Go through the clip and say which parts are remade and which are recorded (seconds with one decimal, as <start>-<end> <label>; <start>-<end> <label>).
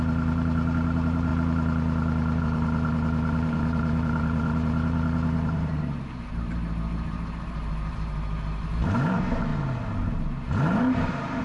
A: 0.0-1.3 remade; 1.3-2.4 recorded; 2.4-9.5 remade; 9.5-10.6 recorded; 10.6-11.4 remade